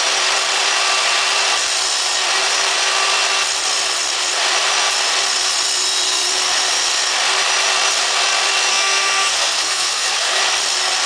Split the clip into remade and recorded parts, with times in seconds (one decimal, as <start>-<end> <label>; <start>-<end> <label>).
0.0-8.7 recorded; 8.7-10.4 remade; 10.4-11.1 recorded